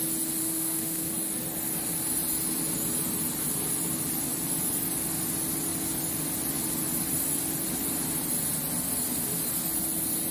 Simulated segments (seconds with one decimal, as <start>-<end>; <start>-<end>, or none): 0.4-1.1